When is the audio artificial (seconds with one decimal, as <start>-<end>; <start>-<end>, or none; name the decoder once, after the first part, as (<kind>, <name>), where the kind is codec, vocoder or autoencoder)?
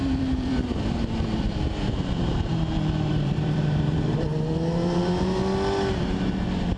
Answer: 0.0-2.5 (vocoder, BigVGAN v2); 3.1-5.4; 6.0-6.8